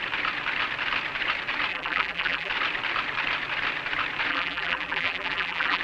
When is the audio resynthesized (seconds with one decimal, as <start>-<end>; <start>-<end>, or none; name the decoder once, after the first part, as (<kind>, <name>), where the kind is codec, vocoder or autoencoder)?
1.7-2.5 (vocoder, BigVGAN v2); 4.3-5.8